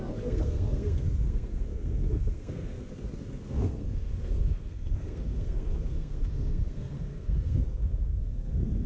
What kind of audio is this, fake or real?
fake